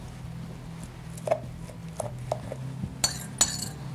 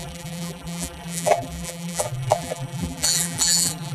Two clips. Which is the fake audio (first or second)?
second